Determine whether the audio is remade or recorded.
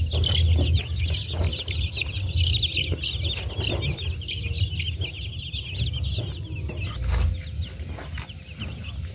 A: recorded